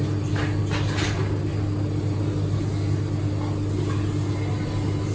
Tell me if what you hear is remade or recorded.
recorded